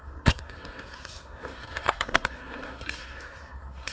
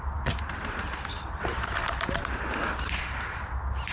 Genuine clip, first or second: second